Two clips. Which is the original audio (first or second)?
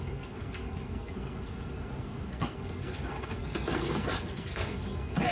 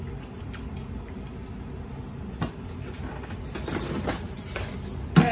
second